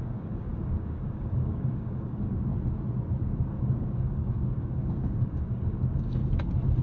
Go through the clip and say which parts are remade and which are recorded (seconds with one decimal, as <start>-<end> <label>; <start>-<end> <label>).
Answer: 0.0-2.5 remade; 2.5-3.2 recorded; 3.2-6.2 remade; 6.2-6.8 recorded